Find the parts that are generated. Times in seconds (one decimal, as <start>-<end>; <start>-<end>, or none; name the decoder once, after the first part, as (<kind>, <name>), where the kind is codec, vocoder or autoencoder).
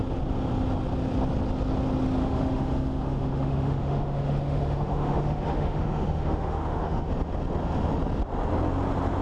2.2-7.1 (autoencoder, DAC-VAE)